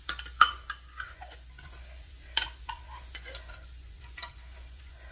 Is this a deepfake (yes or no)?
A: yes